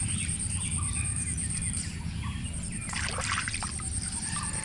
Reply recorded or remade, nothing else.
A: remade